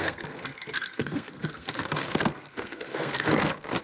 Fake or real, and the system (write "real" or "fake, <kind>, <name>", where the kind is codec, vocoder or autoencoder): fake, codec, SNAC